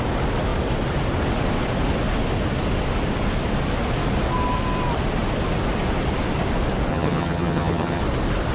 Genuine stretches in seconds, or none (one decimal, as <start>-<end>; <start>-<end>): 0.0-6.9; 8.0-8.5